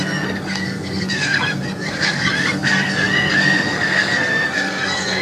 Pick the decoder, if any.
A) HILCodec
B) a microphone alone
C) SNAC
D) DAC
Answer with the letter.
C